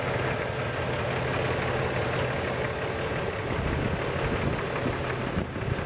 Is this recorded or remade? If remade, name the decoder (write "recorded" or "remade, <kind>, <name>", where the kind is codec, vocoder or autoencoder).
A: recorded